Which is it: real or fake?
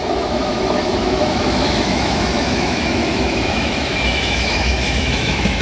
fake